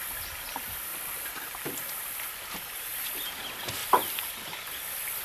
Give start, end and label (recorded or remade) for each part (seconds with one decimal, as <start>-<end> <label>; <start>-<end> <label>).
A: 0.0-3.8 recorded; 3.8-4.3 remade; 4.3-5.2 recorded